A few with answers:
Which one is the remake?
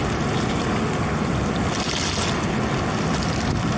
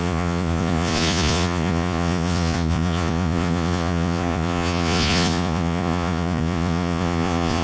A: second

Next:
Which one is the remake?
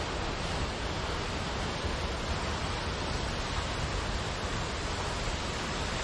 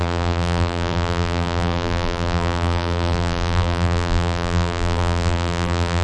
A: second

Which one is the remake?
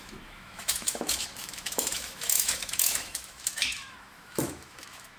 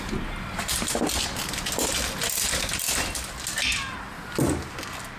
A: first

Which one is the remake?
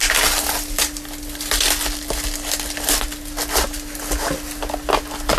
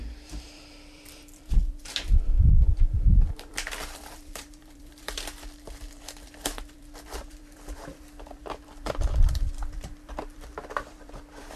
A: second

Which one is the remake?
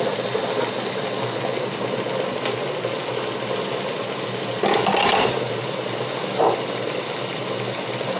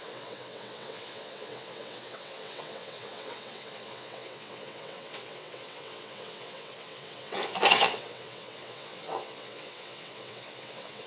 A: second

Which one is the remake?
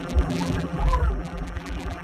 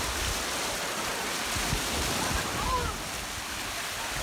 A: first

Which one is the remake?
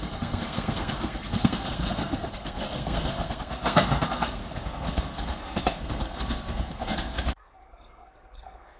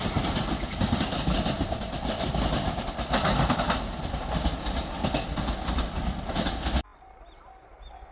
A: first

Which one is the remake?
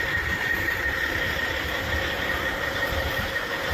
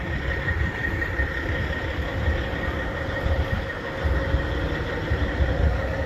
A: first